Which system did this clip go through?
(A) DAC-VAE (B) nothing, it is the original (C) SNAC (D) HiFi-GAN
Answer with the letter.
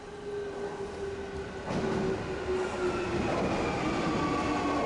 B